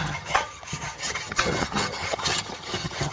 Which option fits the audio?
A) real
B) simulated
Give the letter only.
B